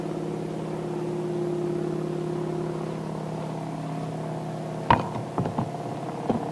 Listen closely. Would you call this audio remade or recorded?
recorded